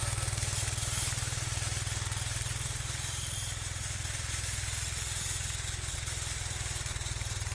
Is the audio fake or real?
fake